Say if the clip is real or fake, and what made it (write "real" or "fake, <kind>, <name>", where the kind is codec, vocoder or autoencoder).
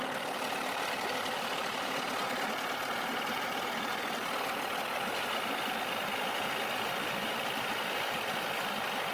real